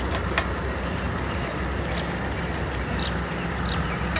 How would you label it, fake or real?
real